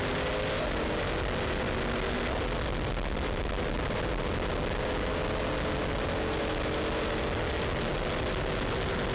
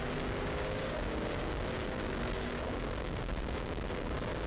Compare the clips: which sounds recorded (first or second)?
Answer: first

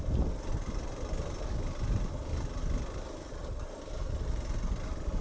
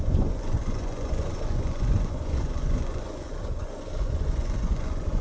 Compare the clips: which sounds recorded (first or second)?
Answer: first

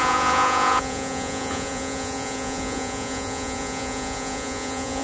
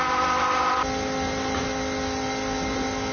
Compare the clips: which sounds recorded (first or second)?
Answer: second